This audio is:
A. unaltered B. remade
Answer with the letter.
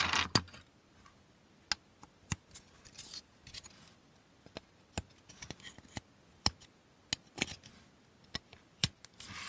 A